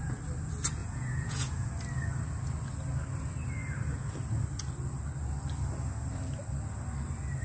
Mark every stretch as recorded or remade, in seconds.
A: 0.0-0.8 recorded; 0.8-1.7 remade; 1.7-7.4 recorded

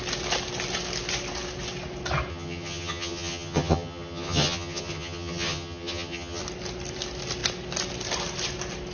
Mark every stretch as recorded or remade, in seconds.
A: 0.0-2.3 recorded; 2.3-6.4 remade; 6.4-8.9 recorded

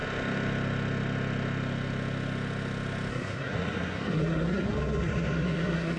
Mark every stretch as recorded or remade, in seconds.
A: 0.0-3.1 recorded; 3.1-6.0 remade

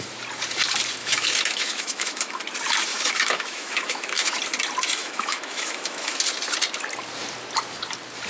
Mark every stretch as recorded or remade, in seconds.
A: 0.0-1.0 recorded; 1.0-2.4 remade; 2.4-2.9 recorded; 2.9-4.4 remade; 4.4-5.0 recorded; 5.0-6.2 remade; 6.2-8.3 recorded